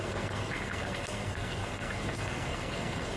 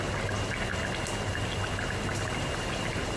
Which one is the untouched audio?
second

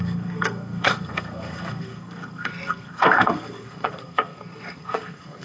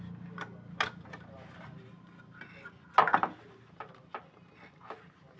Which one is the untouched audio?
second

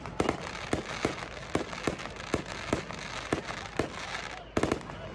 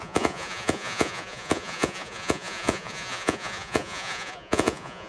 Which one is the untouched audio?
first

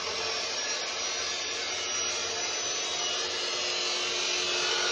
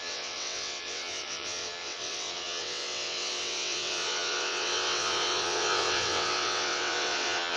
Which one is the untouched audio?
first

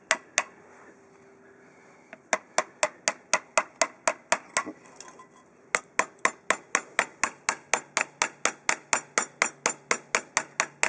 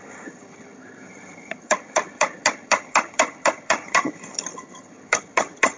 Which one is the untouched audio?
first